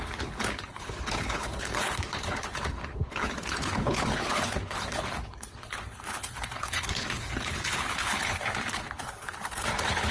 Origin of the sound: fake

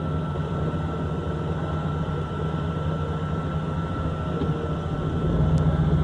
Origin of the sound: real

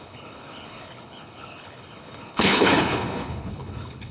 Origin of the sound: fake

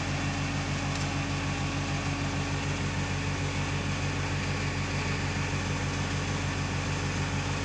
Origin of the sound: real